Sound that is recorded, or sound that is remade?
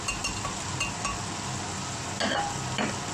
recorded